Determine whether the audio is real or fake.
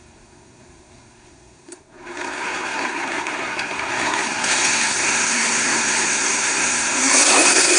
fake